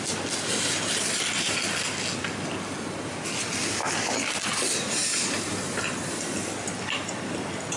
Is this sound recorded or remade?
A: recorded